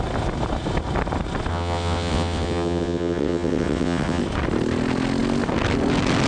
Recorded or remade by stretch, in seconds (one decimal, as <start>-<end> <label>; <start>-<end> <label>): 0.0-1.5 recorded; 1.5-4.2 remade; 4.2-6.3 recorded